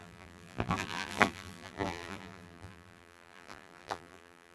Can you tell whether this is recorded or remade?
remade